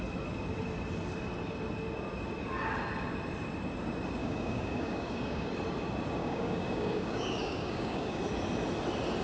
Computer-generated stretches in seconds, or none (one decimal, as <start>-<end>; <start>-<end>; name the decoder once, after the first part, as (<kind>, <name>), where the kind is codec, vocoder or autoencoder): 4.2-5.5 (codec, DAC); 6.2-8.2